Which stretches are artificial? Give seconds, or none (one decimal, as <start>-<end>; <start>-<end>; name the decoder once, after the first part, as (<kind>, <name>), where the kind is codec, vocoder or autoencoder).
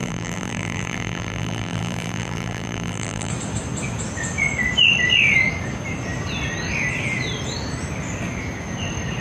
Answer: 0.0-3.3 (vocoder, BigVGAN v2)